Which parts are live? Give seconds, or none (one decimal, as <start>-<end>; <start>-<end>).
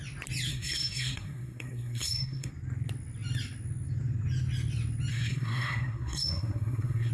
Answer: 0.0-0.5; 2.5-5.1